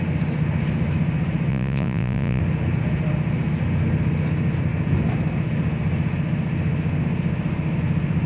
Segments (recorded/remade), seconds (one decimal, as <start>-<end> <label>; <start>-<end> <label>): 0.0-1.5 recorded; 1.5-2.4 remade; 2.4-8.3 recorded